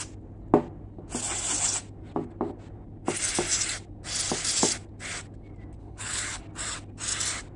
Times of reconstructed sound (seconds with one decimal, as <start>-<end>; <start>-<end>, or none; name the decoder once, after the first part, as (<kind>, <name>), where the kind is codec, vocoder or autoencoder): 5.8-6.4 (codec, HILCodec)